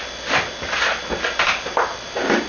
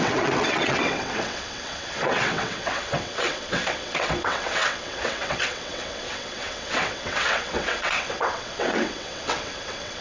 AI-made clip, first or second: second